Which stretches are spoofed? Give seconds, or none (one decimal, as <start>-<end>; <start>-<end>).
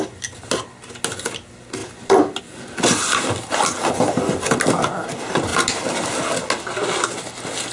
none